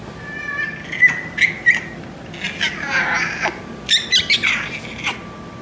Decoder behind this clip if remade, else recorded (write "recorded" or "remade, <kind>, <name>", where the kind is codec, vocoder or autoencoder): recorded